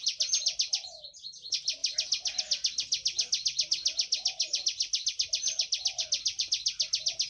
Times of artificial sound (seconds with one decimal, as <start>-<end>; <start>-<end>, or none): none